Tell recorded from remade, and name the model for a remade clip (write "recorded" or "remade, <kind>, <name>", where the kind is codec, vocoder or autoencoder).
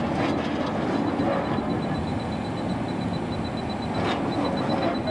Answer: recorded